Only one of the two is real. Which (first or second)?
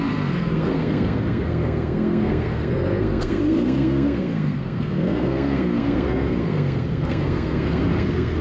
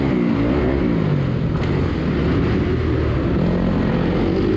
second